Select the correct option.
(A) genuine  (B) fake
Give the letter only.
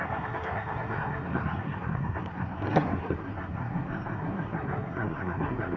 B